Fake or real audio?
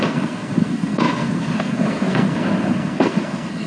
fake